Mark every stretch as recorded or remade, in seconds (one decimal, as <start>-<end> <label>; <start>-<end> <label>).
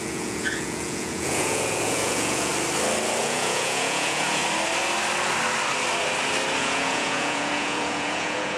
0.0-2.5 remade; 2.5-3.2 recorded; 3.2-4.4 remade; 4.4-6.6 recorded; 6.6-8.6 remade